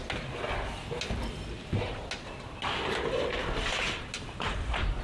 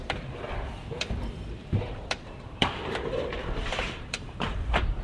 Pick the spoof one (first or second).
second